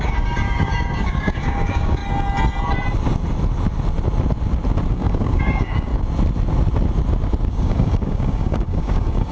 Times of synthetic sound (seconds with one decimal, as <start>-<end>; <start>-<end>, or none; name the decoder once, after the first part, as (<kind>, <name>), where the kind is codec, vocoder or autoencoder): 0.0-2.0 (codec, DAC); 4.9-5.9; 7.5-9.3